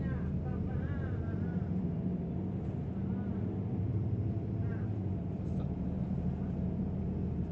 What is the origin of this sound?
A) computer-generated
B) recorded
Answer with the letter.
A